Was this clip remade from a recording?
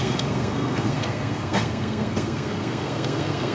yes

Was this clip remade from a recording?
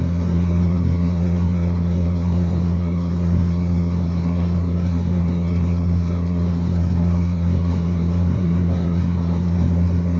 yes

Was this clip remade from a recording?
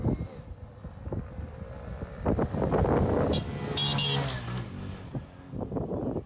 no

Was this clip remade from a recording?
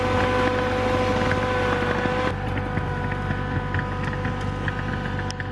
no